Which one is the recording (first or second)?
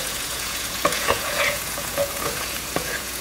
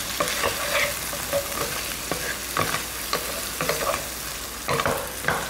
second